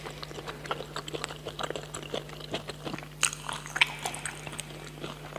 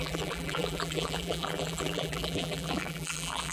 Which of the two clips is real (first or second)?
first